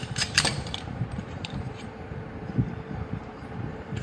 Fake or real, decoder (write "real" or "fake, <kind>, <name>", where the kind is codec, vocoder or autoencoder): fake, vocoder, BigVGAN v2